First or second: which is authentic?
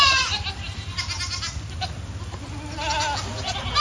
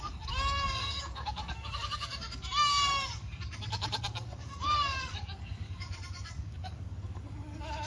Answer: first